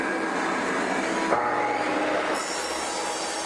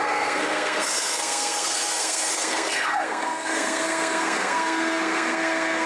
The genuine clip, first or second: first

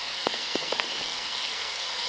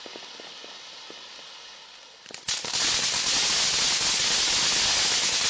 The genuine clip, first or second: second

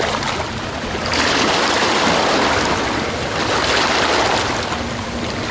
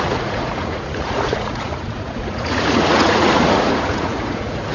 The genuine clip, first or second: first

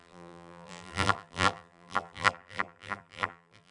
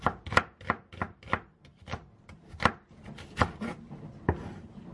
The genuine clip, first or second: second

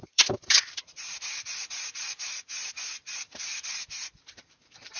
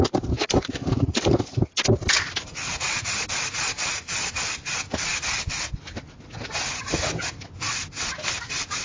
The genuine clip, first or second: second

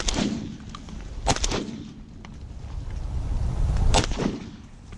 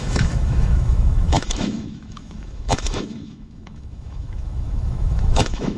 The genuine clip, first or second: first